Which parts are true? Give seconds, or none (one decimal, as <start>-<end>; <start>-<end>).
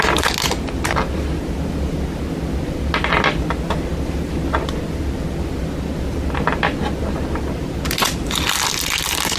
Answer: 0.0-9.4